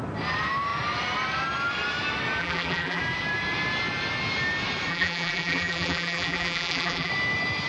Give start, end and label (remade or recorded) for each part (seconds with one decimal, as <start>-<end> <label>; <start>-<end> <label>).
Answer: 0.0-2.4 recorded; 2.4-3.0 remade; 3.0-4.9 recorded; 4.9-7.1 remade; 7.1-7.7 recorded